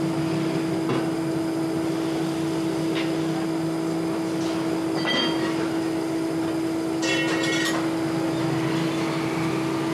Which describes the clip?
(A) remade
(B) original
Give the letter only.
B